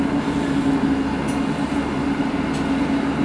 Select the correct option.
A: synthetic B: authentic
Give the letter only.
B